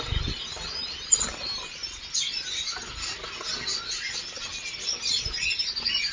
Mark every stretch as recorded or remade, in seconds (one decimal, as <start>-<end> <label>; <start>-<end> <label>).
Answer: 0.0-6.1 recorded